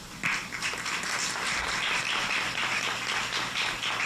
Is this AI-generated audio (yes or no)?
no